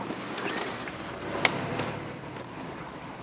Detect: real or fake fake